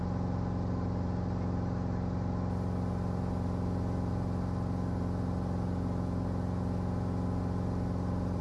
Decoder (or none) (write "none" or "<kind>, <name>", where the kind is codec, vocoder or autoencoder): none